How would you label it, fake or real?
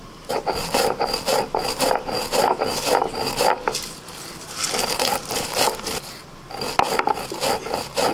real